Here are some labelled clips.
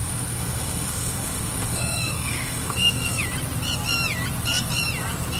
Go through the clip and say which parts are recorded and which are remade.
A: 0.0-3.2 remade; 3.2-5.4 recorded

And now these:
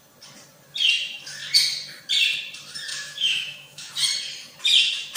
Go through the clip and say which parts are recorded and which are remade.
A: 0.0-2.9 recorded; 2.9-3.9 remade; 3.9-5.2 recorded

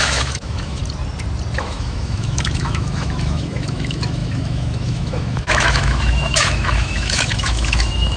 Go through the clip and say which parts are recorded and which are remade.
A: 0.0-0.8 remade; 0.8-1.6 recorded; 1.6-8.2 remade

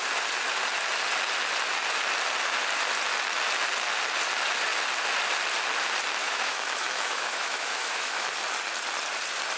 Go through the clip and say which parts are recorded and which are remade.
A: 0.0-6.2 recorded; 6.2-8.3 remade; 8.3-9.6 recorded

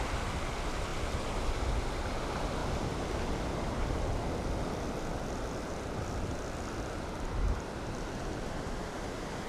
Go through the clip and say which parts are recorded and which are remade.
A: 0.0-9.5 recorded

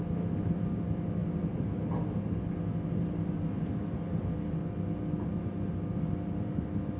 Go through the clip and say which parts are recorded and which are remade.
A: 0.0-7.0 recorded